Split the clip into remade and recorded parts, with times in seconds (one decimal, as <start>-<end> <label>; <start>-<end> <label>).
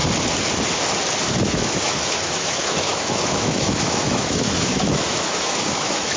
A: 0.0-1.2 recorded; 1.2-6.2 remade